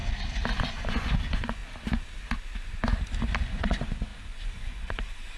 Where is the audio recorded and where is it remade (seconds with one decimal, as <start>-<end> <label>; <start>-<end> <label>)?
0.0-0.6 recorded; 0.6-1.6 remade; 1.6-3.4 recorded; 3.4-5.4 remade